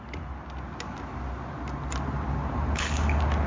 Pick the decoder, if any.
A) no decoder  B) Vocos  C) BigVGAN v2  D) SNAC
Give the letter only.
A